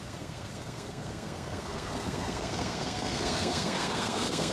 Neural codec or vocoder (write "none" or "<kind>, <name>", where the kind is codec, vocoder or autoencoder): codec, SNAC